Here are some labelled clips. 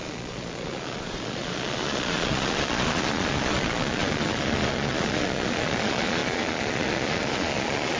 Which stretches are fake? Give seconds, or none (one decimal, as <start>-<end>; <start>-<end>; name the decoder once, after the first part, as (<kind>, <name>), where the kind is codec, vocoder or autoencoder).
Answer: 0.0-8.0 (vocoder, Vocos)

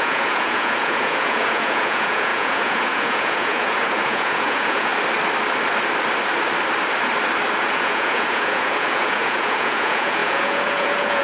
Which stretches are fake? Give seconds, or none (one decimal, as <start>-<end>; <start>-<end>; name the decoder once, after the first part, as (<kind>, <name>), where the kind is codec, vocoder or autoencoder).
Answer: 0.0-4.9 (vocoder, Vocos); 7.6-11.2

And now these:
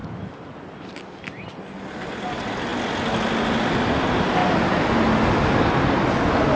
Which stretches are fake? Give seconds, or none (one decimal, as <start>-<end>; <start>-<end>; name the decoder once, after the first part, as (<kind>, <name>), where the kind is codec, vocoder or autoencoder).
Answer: none

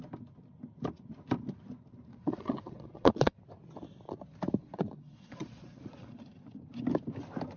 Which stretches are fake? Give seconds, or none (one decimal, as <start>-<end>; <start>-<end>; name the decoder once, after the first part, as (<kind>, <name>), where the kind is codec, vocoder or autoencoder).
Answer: 2.1-3.4 (vocoder, Vocos); 4.6-6.2